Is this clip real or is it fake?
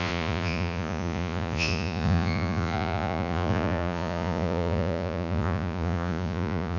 fake